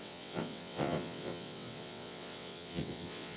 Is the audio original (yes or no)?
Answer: no